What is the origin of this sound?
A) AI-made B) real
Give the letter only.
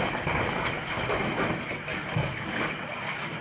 B